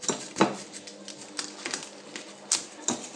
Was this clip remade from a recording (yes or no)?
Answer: no